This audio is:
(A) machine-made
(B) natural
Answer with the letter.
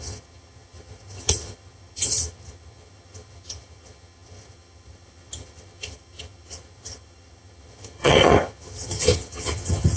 A